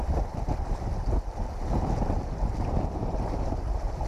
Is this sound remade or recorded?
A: remade